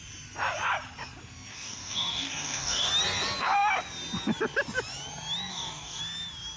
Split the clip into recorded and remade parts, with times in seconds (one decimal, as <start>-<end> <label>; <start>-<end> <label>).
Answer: 0.0-1.5 recorded; 1.5-2.9 remade; 2.9-5.5 recorded; 5.5-6.0 remade; 6.0-6.6 recorded

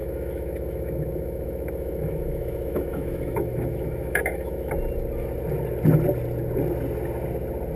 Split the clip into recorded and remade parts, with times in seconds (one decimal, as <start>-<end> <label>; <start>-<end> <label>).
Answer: 0.0-4.7 remade; 4.7-7.8 recorded